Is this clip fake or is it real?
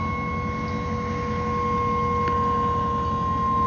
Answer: real